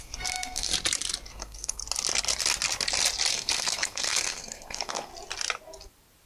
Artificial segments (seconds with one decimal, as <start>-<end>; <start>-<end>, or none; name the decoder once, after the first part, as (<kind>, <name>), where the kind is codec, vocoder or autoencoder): 0.0-0.7 (codec, SNAC); 1.3-1.8; 3.3-5.1